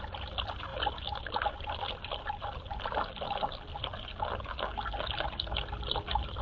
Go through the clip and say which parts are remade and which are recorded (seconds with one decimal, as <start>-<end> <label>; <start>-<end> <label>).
0.0-6.4 recorded